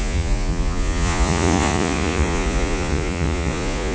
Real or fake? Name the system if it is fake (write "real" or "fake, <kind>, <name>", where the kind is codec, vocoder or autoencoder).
fake, vocoder, Vocos